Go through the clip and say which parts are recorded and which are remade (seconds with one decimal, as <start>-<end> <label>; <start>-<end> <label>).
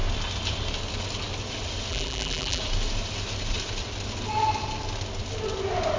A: 0.0-1.9 recorded; 1.9-2.6 remade; 2.6-6.0 recorded